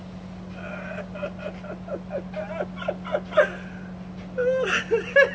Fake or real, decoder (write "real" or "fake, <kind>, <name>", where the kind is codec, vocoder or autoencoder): real